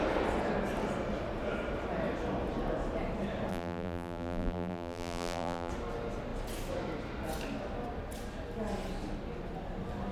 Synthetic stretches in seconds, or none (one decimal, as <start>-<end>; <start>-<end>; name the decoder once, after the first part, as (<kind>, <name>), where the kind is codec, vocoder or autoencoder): 3.5-5.7 (vocoder, BigVGAN v2)